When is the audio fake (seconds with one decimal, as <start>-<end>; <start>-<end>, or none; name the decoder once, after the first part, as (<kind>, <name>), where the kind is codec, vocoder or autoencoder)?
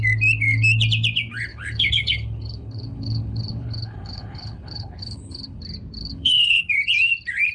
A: 1.5-5.6 (codec, HILCodec); 6.0-6.7